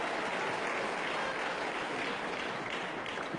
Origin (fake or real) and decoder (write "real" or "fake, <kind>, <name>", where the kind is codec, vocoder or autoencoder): real